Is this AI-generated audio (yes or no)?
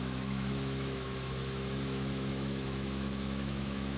yes